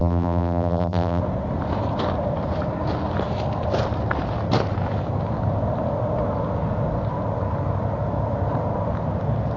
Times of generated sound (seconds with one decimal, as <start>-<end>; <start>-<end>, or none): 0.0-1.2